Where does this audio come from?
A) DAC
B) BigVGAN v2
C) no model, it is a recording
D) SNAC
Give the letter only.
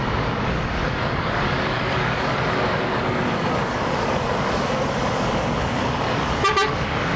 A